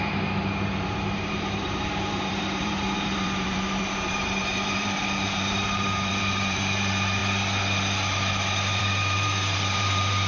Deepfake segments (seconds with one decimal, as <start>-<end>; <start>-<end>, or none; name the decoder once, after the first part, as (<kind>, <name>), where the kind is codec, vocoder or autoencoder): 0.0-7.2 (vocoder, BigVGAN v2); 8.8-10.3